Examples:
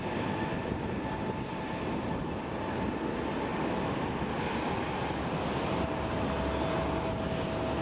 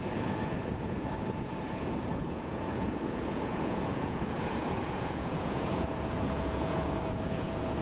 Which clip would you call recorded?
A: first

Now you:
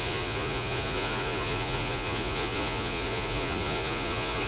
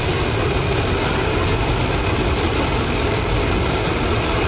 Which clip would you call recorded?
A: second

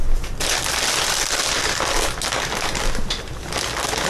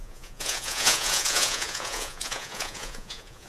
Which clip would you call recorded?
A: first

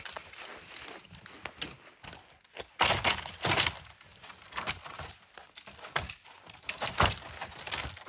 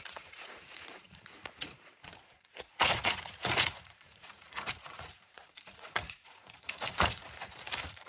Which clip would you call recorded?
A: first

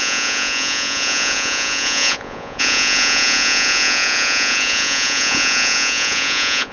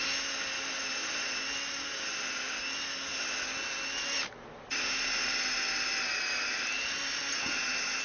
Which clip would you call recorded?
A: second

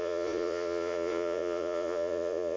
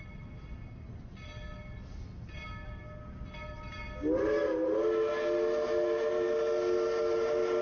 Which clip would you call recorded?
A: second